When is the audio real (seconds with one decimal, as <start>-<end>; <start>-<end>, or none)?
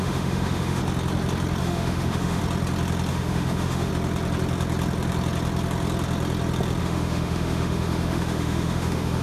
0.8-1.6; 2.4-3.1; 3.9-6.8